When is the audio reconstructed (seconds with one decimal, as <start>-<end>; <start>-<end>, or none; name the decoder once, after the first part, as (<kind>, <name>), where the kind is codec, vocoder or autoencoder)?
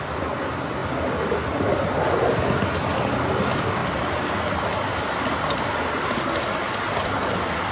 none